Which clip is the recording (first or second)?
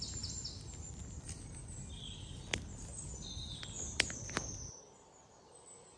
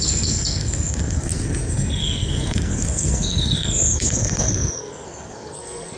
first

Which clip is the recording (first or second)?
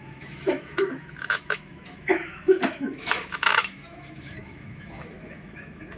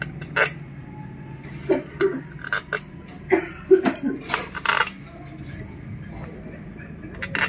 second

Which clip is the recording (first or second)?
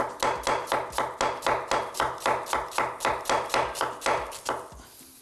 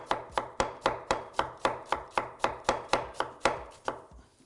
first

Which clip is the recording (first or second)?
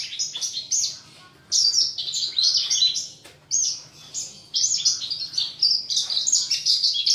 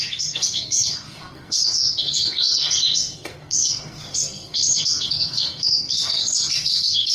first